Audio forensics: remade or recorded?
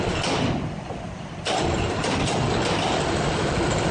recorded